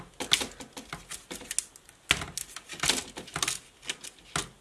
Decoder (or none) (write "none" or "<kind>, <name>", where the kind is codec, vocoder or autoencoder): none